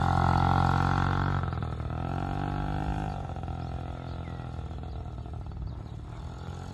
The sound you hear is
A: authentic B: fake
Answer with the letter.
A